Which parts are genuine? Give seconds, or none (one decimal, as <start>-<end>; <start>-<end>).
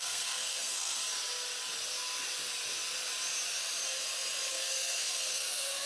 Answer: 1.0-4.5